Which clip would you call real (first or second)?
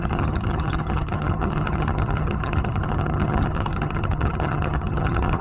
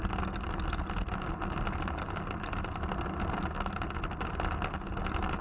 second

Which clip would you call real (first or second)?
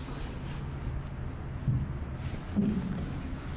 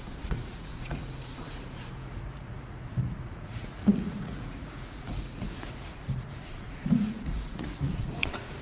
first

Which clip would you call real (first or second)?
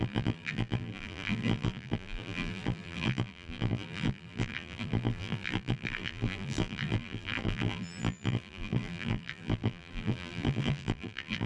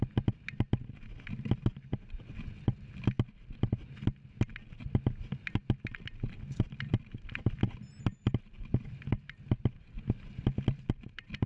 second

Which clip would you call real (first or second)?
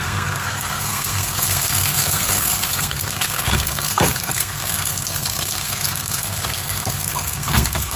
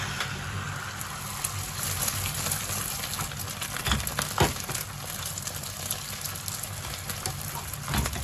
second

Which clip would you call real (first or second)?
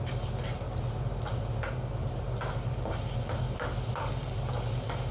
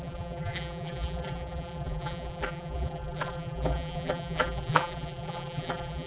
first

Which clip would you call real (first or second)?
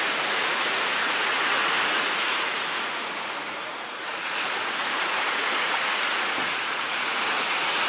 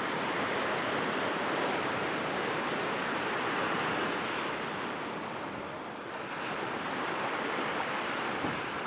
second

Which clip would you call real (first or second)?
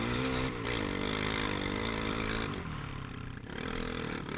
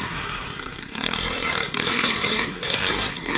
first